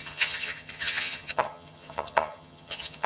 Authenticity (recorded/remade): remade